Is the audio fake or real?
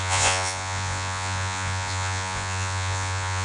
fake